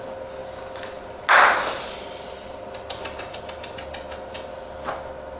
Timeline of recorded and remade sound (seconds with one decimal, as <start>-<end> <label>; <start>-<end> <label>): 0.0-5.4 recorded